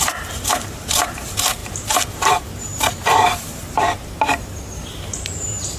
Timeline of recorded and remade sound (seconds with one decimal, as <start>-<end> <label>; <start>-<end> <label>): 0.0-5.8 remade